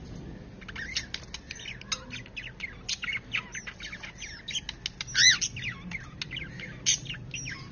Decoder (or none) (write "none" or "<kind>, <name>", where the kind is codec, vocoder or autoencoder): none